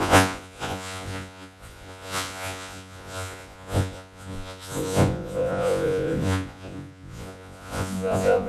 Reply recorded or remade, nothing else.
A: remade